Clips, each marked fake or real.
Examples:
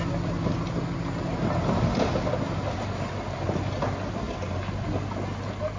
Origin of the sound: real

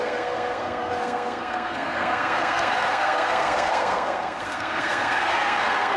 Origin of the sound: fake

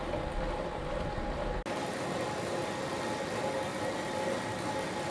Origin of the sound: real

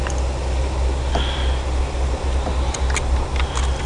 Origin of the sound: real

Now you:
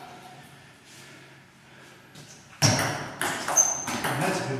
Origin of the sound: real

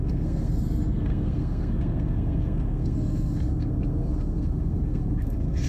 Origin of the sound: fake